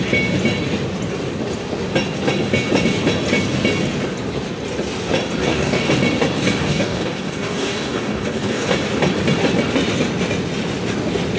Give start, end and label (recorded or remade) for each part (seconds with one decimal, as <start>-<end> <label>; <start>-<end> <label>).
0.0-5.4 recorded; 5.4-5.9 remade; 5.9-6.6 recorded; 6.6-8.7 remade; 8.7-11.4 recorded